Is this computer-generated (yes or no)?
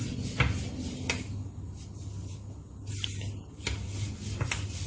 no